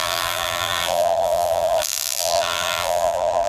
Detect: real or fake fake